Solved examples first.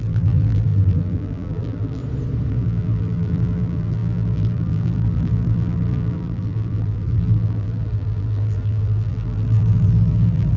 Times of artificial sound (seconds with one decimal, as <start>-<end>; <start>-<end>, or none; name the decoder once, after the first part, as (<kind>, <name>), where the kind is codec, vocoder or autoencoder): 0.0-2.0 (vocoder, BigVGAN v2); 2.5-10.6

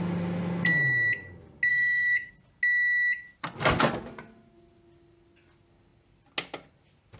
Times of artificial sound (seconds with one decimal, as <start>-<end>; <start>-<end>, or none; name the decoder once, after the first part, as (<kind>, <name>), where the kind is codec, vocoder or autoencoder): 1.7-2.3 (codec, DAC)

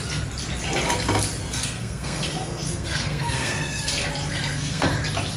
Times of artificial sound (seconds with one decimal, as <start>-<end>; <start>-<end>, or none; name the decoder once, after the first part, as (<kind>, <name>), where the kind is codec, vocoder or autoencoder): 1.4-3.9 (codec, SNAC); 4.3-4.9

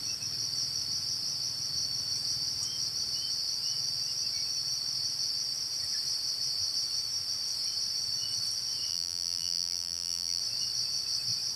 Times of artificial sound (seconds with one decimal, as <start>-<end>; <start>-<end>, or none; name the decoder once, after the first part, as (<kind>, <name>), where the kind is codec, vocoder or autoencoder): 8.9-10.4 (vocoder, BigVGAN v2)

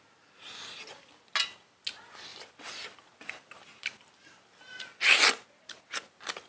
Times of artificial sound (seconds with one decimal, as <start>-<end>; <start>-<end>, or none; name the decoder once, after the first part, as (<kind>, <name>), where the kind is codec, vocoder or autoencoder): none

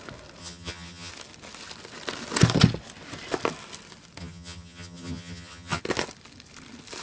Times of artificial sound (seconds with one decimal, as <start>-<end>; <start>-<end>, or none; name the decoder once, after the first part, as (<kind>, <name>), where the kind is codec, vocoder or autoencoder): 0.4-1.1 (vocoder, HiFi-GAN); 4.2-5.8

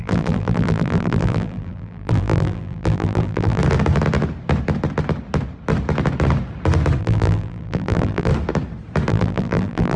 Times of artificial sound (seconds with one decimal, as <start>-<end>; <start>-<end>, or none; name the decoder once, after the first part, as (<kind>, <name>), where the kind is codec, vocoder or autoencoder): 0.0-3.6 (vocoder, BigVGAN v2); 7.0-8.3; 9.1-10.0

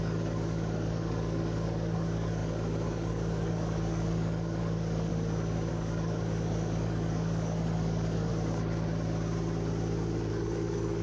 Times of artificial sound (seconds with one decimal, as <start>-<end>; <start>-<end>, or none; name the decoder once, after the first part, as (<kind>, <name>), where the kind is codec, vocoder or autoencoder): 0.0-5.1 (codec, DAC); 5.7-8.3; 10.3-11.0